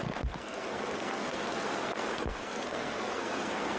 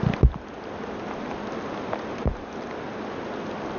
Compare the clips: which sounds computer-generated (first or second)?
first